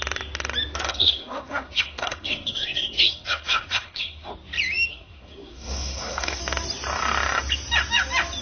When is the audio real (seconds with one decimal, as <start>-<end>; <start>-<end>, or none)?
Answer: 0.0-0.9; 4.3-4.9; 6.4-8.4